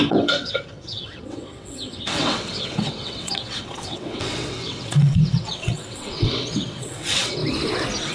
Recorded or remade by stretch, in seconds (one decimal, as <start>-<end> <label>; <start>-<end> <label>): 0.0-7.4 remade; 7.4-8.1 recorded